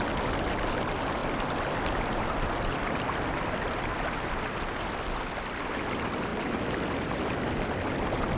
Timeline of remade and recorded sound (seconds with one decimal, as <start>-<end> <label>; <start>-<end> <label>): 0.0-8.4 recorded